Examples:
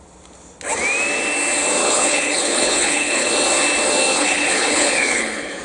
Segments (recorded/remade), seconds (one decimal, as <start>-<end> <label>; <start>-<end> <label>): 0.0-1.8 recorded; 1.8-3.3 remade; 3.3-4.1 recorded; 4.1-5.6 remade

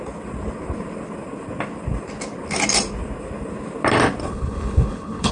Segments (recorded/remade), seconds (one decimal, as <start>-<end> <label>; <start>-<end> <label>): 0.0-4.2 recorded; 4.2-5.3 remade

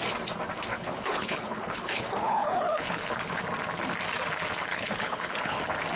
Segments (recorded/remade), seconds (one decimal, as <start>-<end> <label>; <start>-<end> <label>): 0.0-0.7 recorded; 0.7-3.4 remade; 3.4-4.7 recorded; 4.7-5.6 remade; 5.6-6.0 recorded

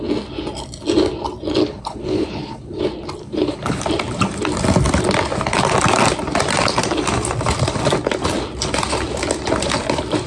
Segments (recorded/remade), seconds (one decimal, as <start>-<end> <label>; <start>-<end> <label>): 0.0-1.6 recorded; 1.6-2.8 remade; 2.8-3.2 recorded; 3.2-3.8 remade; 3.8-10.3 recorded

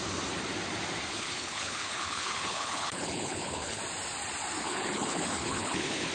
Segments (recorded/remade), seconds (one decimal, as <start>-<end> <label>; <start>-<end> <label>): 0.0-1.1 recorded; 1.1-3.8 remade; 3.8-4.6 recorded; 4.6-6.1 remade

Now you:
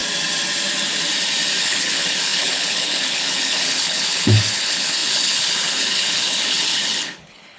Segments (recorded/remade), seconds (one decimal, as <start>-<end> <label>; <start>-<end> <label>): 0.0-1.6 recorded; 1.6-7.6 remade

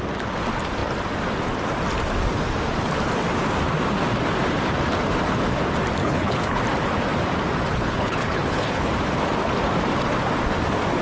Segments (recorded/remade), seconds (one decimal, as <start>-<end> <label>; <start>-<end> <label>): 0.0-6.0 recorded; 6.0-6.6 remade; 6.6-7.7 recorded; 7.7-8.9 remade; 8.9-11.0 recorded

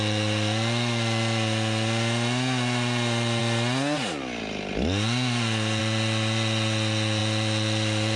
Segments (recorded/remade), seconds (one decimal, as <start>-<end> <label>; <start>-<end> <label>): 0.0-8.2 recorded